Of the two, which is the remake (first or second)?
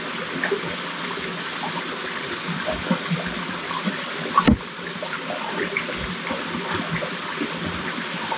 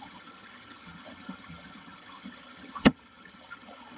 second